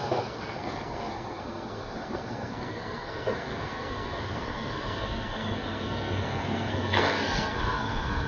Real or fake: fake